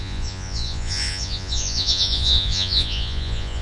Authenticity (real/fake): fake